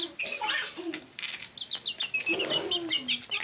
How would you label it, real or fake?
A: real